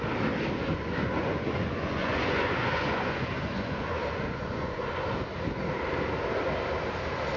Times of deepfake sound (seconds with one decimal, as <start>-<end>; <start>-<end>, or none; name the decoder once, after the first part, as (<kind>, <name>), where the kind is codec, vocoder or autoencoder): 0.7-5.1 (vocoder, Vocos)

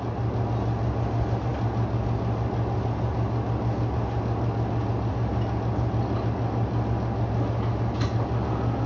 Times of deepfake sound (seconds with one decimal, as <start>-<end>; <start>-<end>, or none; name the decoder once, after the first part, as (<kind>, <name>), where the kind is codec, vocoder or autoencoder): none

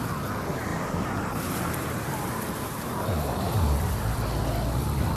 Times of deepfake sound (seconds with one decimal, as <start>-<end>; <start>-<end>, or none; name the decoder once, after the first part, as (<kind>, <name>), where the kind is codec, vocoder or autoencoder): 0.7-3.8 (vocoder, BigVGAN v2)

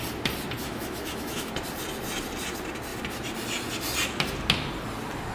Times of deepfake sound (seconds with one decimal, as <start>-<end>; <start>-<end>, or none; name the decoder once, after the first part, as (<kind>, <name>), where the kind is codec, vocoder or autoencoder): 0.6-1.5 (autoencoder, DAC-VAE)

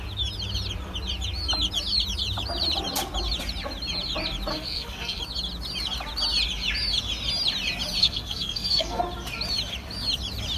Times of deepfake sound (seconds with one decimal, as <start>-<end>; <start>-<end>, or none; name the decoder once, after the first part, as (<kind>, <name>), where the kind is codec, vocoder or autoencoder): 4.5-5.2 (codec, SNAC); 8.0-9.0

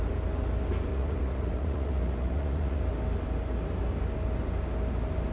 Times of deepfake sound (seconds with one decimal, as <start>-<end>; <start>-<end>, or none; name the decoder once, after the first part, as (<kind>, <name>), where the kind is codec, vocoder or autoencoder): 0.9-2.8 (vocoder, Vocos)

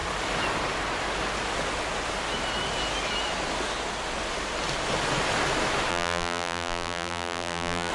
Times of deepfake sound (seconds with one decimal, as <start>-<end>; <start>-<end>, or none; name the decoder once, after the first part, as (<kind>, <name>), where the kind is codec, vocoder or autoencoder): 5.9-7.9 (vocoder, BigVGAN v2)